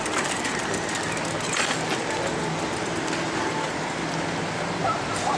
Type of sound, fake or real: real